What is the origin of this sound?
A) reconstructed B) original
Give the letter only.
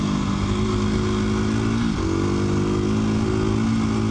B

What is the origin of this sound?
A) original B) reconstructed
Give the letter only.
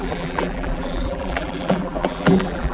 B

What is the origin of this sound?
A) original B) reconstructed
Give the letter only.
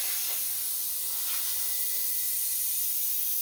A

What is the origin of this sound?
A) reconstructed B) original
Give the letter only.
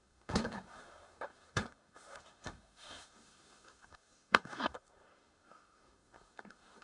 A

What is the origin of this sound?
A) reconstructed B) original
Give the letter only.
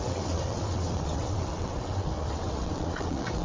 A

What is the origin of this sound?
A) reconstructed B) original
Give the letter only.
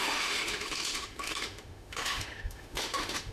A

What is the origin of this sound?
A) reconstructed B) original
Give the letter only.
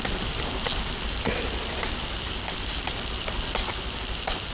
B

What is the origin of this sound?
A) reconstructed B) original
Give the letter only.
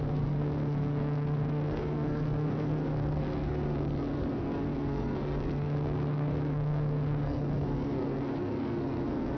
A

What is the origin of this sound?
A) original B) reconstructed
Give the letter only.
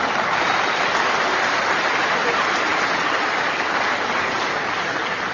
A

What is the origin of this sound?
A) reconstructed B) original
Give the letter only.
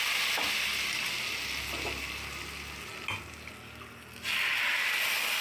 B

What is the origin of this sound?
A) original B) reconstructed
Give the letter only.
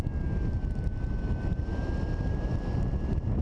A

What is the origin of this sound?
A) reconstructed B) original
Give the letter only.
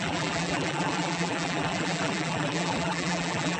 A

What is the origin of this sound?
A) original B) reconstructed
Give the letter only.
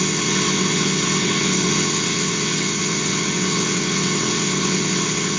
B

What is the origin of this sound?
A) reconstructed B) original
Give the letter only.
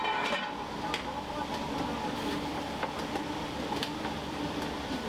B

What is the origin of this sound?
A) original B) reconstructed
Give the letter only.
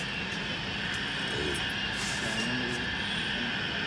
A